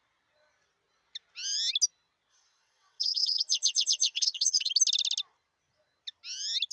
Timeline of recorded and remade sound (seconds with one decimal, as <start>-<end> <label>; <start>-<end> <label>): 0.0-2.3 recorded; 2.3-4.7 remade; 4.7-6.7 recorded